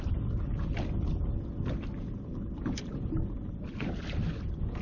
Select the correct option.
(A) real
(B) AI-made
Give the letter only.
A